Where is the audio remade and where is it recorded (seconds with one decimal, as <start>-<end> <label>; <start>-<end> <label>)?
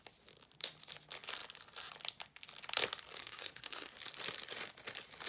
0.0-3.2 recorded; 3.2-3.9 remade; 3.9-5.3 recorded